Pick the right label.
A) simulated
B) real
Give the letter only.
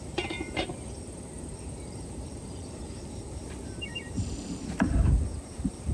A